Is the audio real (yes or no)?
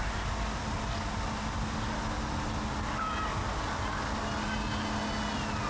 yes